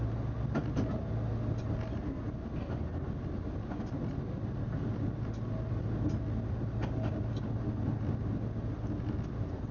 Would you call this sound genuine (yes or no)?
yes